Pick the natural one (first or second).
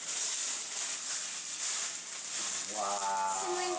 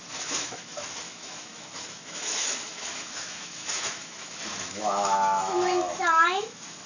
first